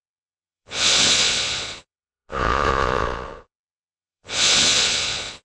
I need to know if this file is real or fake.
fake